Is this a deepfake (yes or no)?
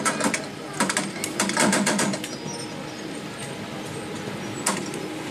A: no